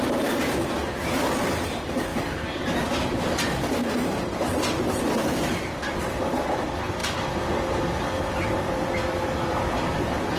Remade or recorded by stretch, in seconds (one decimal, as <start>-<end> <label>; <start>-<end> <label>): 0.0-0.8 remade; 0.8-1.7 recorded; 1.7-2.1 remade; 2.1-4.1 recorded; 4.1-7.0 remade; 7.0-8.2 recorded; 8.2-10.4 remade